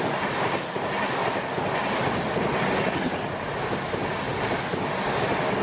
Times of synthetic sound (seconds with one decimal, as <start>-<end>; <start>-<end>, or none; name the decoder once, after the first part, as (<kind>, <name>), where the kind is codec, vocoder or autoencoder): none